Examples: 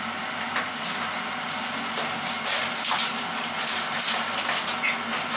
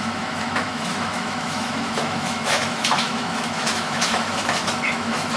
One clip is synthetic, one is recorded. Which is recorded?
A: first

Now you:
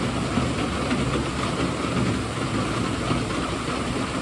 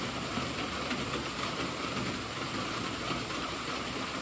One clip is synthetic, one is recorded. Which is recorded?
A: first